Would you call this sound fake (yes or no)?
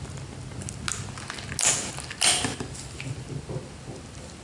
no